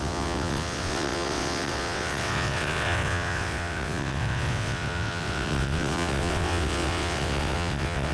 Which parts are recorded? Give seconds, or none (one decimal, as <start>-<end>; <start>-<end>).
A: none